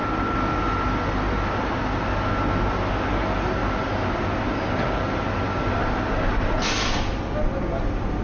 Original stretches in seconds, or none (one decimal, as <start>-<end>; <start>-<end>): 0.0-8.2